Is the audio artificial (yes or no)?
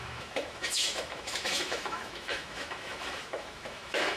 yes